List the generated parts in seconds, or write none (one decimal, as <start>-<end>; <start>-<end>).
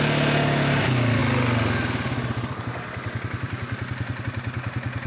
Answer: none